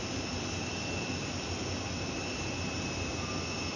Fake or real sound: real